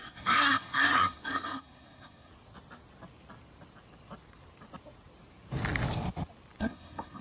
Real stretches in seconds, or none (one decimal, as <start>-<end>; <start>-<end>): 2.3-6.6